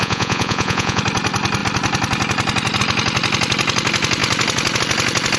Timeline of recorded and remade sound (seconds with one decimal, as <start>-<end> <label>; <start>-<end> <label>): 0.0-1.0 remade; 1.0-5.4 recorded

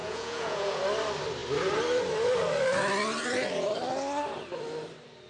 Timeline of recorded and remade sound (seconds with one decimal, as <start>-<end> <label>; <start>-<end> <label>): 0.0-0.8 remade; 0.8-5.3 recorded

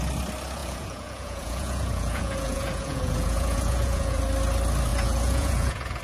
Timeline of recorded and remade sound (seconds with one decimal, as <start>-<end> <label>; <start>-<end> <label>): 0.0-0.6 recorded; 0.6-4.2 remade; 4.2-4.9 recorded; 4.9-6.0 remade